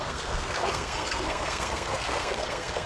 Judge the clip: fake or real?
fake